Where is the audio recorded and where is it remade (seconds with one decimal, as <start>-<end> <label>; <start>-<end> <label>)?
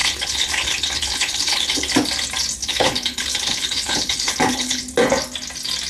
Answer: 0.0-1.9 remade; 1.9-2.6 recorded; 2.6-4.8 remade; 4.8-5.9 recorded